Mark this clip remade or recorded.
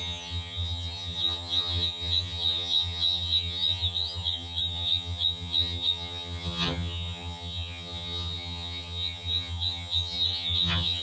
remade